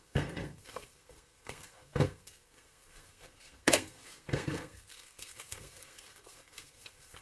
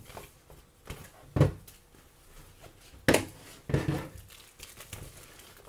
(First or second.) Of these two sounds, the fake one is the first